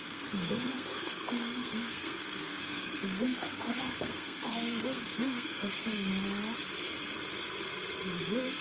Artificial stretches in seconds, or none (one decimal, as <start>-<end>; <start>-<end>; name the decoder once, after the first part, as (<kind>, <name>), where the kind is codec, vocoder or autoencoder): 0.0-6.1 (codec, SNAC); 8.2-8.6